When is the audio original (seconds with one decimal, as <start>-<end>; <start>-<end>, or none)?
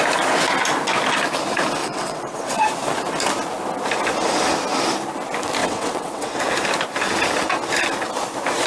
0.0-1.8; 2.5-5.6; 6.4-8.7